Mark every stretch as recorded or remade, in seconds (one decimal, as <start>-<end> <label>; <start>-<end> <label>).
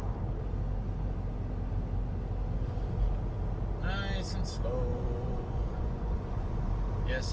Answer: 0.0-4.9 recorded; 4.9-6.7 remade; 6.7-7.3 recorded